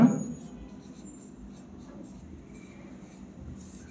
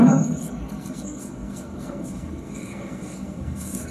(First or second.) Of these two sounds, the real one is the first